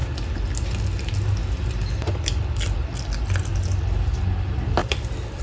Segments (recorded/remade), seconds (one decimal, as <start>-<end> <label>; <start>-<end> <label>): 0.0-4.8 recorded; 4.8-5.4 remade